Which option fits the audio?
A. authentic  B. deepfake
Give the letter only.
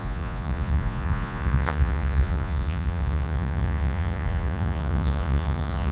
B